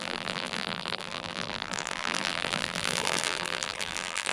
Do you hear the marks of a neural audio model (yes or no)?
yes